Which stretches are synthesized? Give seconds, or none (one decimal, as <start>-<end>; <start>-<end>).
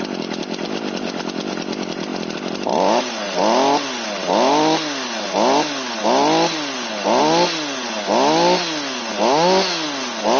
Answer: none